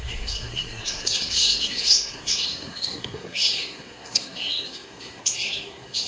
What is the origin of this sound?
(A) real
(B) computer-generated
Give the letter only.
B